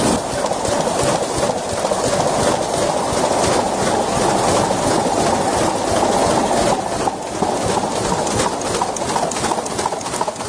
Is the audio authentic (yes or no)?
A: yes